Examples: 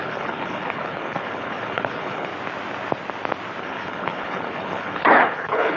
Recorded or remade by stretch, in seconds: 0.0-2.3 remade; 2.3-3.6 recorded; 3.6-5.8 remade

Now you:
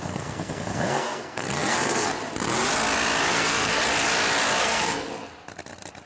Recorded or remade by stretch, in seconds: 0.0-2.2 remade; 2.2-3.3 recorded; 3.3-3.8 remade; 3.8-4.6 recorded; 4.6-5.1 remade; 5.1-6.1 recorded